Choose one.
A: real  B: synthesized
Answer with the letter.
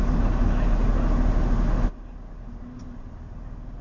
A